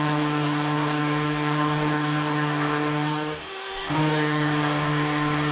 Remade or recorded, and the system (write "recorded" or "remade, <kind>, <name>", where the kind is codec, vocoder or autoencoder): remade, codec, DAC